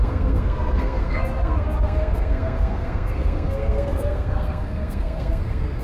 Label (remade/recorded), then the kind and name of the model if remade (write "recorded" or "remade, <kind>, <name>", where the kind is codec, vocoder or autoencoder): remade, codec, SNAC